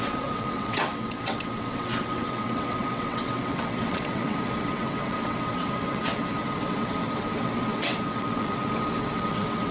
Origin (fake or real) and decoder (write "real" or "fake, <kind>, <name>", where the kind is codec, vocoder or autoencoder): fake, vocoder, WaveNeXt